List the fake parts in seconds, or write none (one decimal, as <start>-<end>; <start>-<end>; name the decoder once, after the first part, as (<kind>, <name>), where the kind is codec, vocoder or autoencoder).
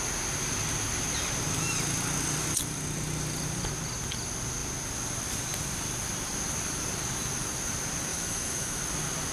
8.1-8.8 (autoencoder, DAC-VAE)